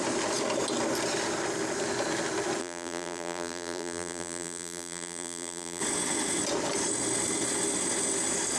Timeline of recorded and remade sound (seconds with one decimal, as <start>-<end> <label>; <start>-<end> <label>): 0.0-2.6 recorded; 2.6-5.8 remade; 5.8-8.6 recorded